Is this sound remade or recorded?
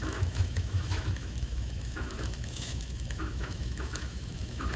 remade